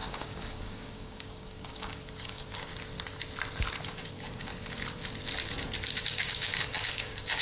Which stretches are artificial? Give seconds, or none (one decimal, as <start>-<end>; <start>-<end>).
0.0-2.7; 3.8-4.5; 6.0-7.4